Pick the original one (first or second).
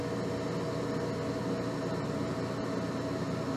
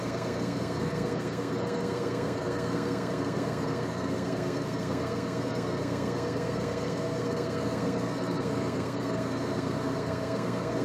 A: first